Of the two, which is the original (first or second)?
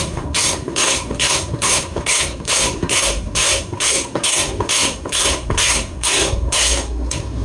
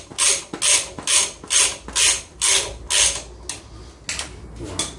second